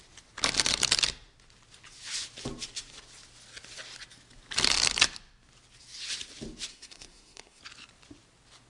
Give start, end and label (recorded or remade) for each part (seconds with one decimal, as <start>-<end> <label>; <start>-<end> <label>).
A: 0.0-6.7 recorded; 6.7-7.6 remade; 7.6-8.7 recorded